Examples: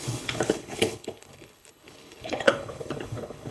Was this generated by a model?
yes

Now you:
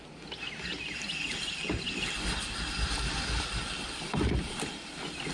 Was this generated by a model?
no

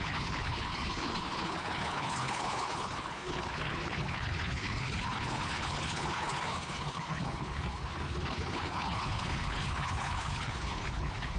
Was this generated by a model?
yes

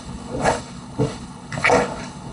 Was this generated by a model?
yes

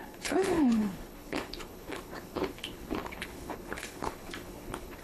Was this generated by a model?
yes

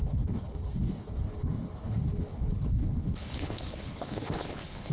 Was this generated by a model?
yes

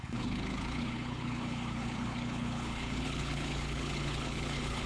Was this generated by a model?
yes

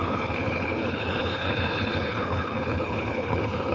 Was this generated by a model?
yes